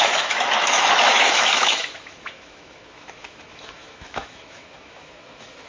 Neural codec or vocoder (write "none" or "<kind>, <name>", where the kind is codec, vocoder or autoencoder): autoencoder, DAC-VAE